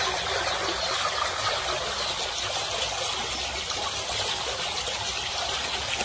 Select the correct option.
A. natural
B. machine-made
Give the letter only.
A